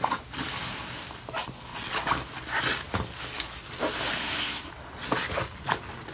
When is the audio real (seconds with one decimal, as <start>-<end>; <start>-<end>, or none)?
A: 0.0-4.2; 4.7-6.1